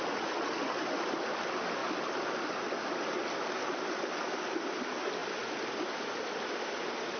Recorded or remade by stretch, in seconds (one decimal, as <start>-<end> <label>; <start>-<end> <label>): 0.0-7.2 recorded